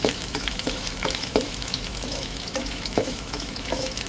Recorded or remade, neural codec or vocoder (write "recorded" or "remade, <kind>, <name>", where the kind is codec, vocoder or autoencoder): remade, autoencoder, DAC-VAE